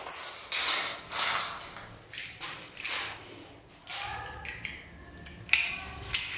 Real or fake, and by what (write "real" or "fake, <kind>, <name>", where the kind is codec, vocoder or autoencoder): real